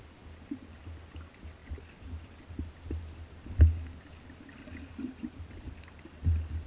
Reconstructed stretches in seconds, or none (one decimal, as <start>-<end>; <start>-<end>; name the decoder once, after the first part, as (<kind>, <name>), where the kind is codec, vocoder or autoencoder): none